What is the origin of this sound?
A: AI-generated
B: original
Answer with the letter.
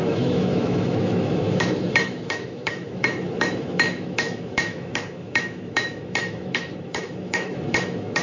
A